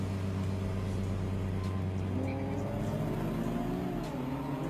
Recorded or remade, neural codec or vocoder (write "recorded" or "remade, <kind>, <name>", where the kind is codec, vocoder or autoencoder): recorded